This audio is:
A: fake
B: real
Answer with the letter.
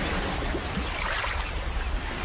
B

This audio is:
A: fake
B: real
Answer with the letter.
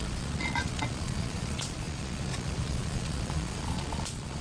A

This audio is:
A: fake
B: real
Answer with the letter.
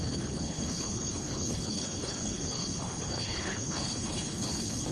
A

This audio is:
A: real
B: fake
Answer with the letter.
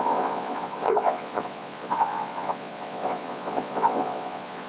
B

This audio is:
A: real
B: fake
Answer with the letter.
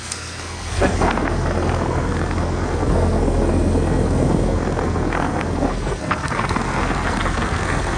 B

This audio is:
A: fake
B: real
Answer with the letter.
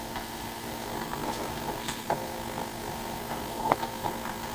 A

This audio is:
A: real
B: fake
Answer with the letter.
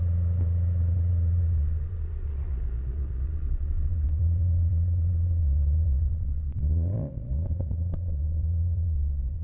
B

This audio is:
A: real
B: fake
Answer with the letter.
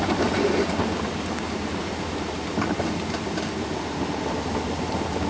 A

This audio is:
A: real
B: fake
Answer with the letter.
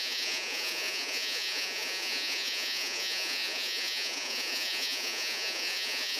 B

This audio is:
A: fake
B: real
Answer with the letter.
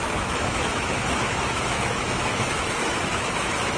A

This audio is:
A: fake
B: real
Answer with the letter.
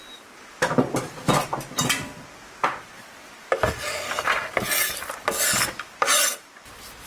B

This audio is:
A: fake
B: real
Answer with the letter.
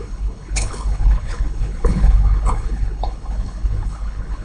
A